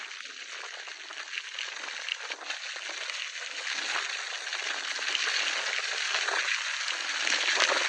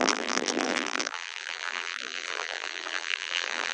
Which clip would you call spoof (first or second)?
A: second